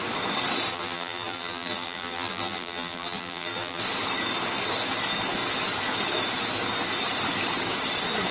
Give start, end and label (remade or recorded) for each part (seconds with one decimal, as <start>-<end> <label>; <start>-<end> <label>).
0.0-0.7 recorded; 0.7-3.8 remade; 3.8-8.3 recorded